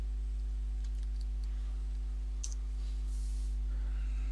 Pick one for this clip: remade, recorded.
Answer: recorded